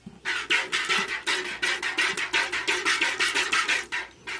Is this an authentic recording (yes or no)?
yes